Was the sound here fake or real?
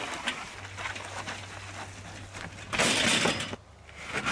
real